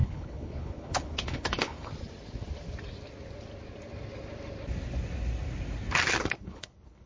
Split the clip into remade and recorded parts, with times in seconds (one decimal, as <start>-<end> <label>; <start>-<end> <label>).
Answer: 0.0-1.9 remade; 1.9-6.2 recorded; 6.2-7.1 remade